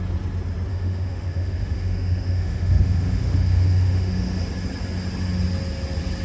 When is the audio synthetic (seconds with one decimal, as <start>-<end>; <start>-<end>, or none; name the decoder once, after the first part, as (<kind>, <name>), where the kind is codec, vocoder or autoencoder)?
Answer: 0.7-4.4 (autoencoder, DAC-VAE)